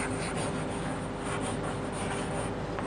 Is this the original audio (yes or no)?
yes